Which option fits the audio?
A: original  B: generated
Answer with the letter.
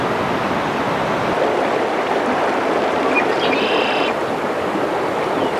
A